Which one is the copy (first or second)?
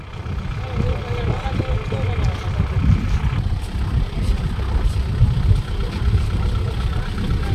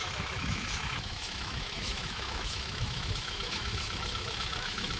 second